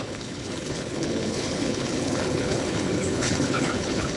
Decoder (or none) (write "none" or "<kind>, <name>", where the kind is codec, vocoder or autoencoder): codec, HILCodec